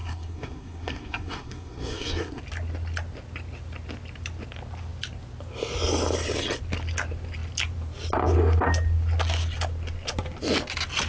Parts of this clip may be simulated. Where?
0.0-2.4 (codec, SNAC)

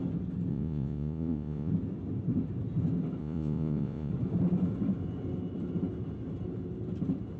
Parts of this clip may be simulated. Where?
0.5-1.7 (vocoder, Vocos); 3.2-4.1

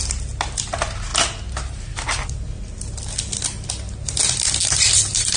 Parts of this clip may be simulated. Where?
none

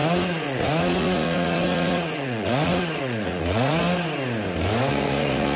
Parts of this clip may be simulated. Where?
0.0-3.8 (vocoder, Vocos); 4.9-5.6

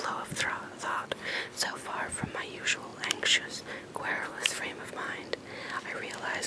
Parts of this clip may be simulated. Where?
0.9-1.9 (codec, HILCodec); 4.1-4.6

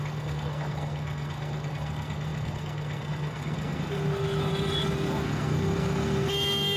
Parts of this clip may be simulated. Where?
0.0-6.8 (codec, SNAC)

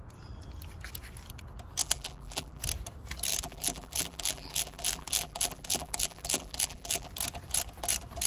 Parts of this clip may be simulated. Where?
1.8-2.6 (vocoder, BigVGAN v2); 3.3-7.1

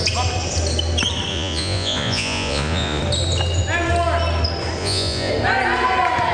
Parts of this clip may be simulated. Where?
1.3-3.0 (vocoder, Vocos); 4.8-5.3